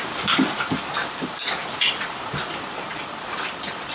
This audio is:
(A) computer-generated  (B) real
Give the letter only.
A